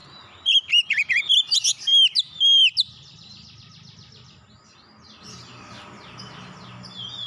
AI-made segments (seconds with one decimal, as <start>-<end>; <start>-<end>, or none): 0.0-1.2